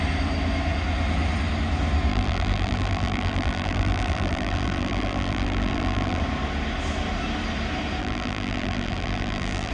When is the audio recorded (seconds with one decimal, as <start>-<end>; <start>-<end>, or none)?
0.0-2.1; 6.2-8.0